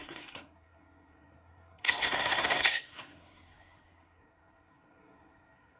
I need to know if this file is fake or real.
fake